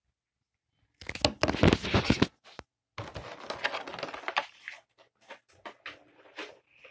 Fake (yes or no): no